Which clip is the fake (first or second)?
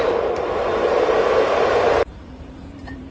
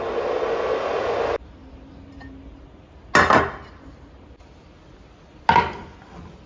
first